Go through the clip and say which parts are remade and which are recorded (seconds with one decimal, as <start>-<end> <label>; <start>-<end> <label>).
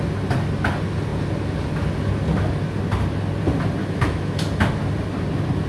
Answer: 0.0-3.8 recorded; 3.8-4.4 remade; 4.4-5.7 recorded